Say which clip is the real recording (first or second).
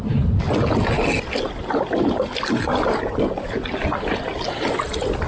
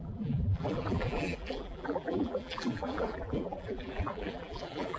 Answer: first